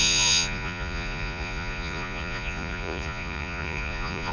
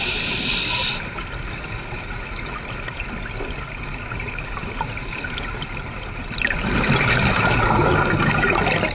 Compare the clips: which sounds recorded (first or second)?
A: second